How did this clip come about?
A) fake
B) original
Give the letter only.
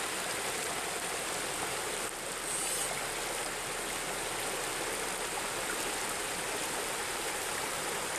B